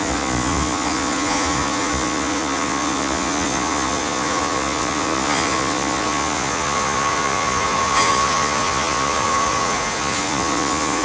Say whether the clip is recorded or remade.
remade